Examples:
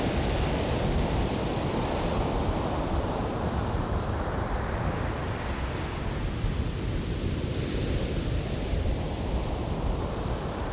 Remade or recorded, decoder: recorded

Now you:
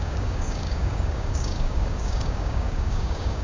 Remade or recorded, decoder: remade, codec, DAC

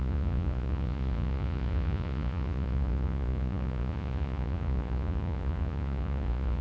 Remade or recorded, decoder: remade, vocoder, Vocos